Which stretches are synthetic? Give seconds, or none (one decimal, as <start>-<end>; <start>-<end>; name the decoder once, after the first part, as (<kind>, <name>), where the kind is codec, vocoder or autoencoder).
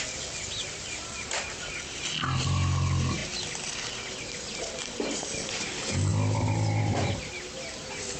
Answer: none